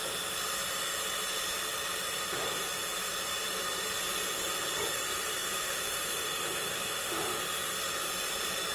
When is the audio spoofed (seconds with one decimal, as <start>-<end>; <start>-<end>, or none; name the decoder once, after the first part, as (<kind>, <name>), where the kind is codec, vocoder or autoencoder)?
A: 5.6-7.4 (autoencoder, DAC-VAE)